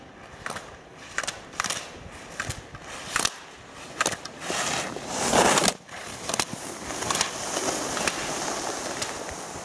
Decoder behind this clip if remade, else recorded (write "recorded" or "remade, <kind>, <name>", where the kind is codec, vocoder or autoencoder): recorded